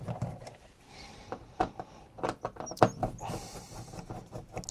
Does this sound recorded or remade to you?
recorded